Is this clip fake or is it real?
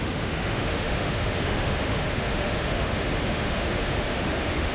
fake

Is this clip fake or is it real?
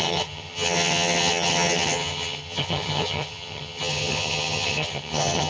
fake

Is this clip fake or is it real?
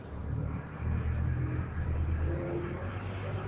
real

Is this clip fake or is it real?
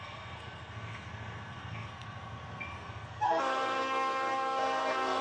fake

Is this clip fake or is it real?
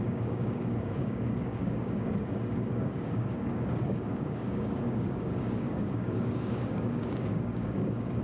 fake